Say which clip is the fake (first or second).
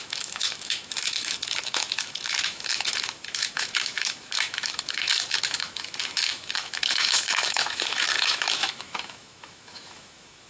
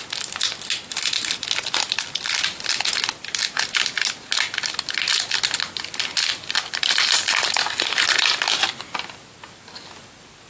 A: first